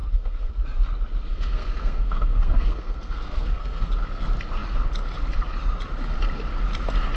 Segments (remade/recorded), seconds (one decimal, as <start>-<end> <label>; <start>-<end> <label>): 0.0-0.5 remade; 0.5-1.3 recorded; 1.3-3.9 remade; 3.9-7.2 recorded